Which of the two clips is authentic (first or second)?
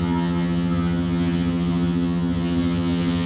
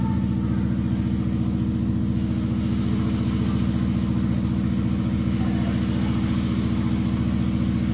second